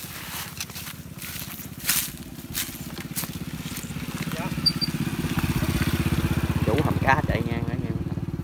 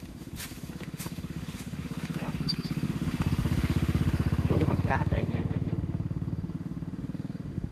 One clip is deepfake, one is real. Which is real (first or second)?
first